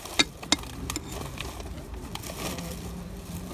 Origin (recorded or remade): recorded